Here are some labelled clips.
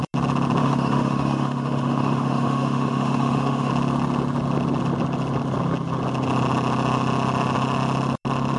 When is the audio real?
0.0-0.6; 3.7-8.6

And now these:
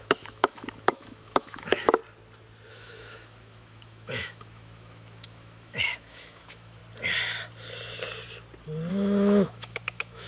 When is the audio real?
2.0-2.7; 6.8-8.9

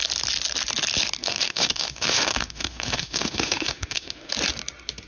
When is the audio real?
0.0-1.2; 4.3-5.1

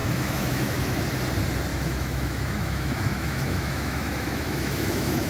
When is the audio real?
1.0-1.7

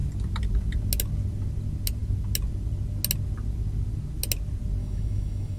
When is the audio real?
0.0-4.8

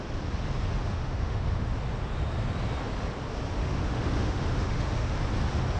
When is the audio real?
0.0-0.8; 1.8-3.6; 5.2-5.8